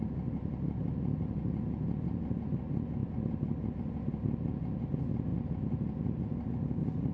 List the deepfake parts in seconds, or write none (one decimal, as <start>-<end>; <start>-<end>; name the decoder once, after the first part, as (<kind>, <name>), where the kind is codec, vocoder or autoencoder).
none